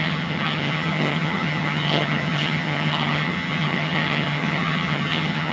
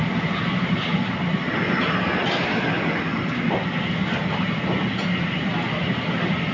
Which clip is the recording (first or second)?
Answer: second